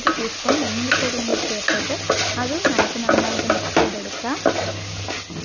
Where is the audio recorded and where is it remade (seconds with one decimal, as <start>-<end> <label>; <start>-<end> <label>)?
0.0-5.4 recorded